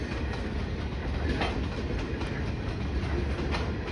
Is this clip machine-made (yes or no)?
no